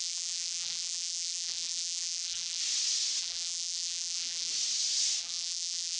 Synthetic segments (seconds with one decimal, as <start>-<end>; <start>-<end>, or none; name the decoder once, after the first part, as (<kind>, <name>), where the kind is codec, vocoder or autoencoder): 0.0-2.6 (vocoder, BigVGAN v2); 3.2-4.5; 5.2-6.0